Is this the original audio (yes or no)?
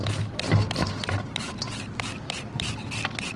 no